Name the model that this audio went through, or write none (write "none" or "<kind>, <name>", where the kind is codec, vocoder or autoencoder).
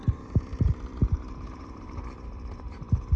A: vocoder, BigVGAN v2